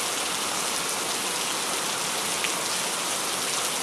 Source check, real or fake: real